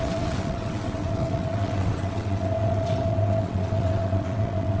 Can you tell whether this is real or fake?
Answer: fake